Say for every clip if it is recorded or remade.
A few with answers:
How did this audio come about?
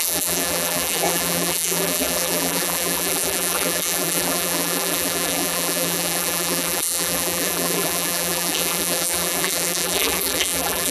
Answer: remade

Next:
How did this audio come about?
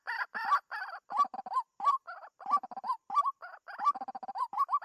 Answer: remade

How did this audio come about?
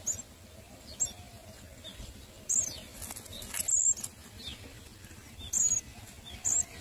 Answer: recorded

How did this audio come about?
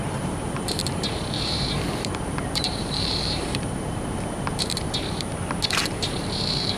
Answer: remade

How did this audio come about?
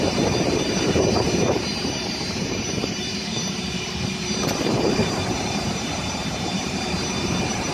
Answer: remade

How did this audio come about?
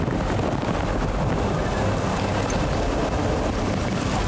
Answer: recorded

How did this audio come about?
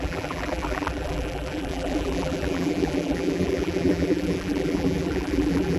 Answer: remade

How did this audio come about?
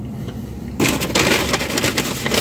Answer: recorded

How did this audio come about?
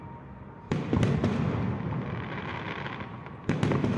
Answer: recorded